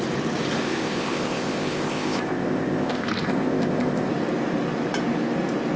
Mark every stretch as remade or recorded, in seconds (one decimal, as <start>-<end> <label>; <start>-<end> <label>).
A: 0.0-0.6 recorded; 0.6-4.1 remade; 4.1-5.8 recorded